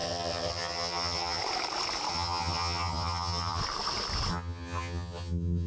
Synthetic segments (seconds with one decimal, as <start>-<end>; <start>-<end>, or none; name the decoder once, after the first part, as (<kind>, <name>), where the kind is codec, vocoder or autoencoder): 0.0-1.4 (vocoder, HiFi-GAN); 2.1-3.6; 4.3-5.7